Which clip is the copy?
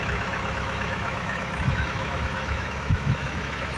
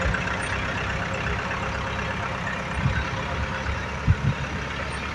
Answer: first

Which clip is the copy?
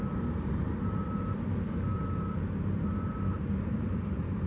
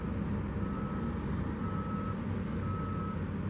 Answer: first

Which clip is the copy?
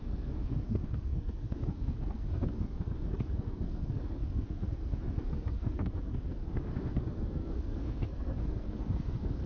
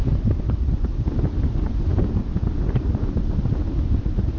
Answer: first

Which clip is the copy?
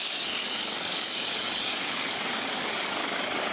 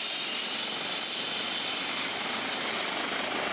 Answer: first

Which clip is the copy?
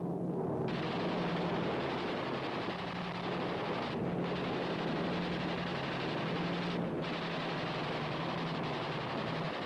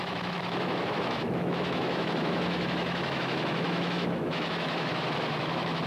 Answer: second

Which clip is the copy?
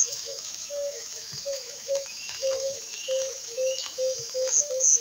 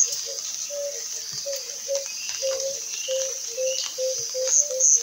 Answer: first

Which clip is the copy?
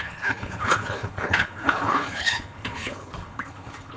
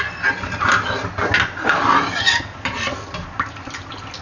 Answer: first